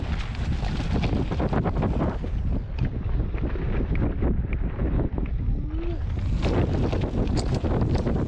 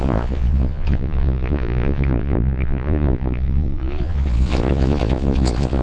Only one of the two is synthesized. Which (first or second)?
second